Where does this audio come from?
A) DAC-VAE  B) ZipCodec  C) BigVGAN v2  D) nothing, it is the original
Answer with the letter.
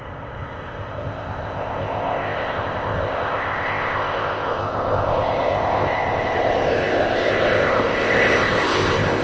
B